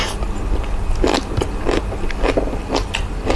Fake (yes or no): no